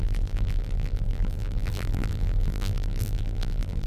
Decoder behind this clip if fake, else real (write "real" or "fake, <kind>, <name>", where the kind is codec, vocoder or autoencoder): fake, vocoder, BigVGAN v2